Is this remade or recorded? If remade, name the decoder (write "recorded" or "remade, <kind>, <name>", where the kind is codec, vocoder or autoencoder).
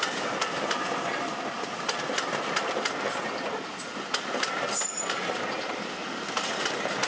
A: recorded